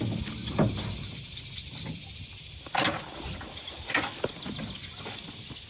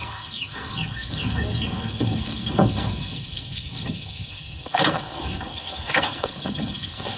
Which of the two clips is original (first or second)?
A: first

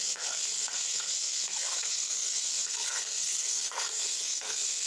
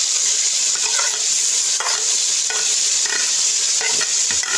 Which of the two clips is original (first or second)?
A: second